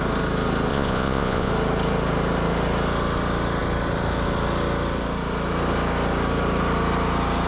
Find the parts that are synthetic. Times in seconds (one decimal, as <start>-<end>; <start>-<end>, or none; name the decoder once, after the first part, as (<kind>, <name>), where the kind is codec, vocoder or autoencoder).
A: 0.7-1.5 (vocoder, Vocos)